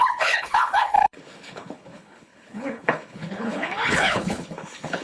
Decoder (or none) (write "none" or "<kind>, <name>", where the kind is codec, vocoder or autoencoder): codec, HILCodec